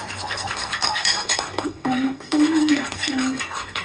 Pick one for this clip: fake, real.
fake